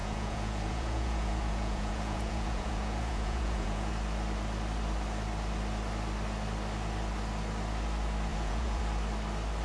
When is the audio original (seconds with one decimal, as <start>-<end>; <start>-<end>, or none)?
3.9-8.3; 8.8-9.6